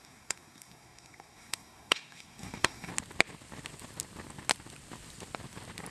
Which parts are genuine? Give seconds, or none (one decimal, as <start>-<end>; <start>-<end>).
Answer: 2.9-5.9